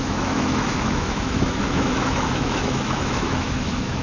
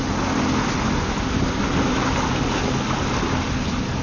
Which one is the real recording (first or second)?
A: second